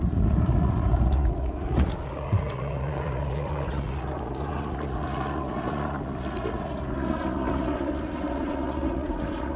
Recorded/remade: remade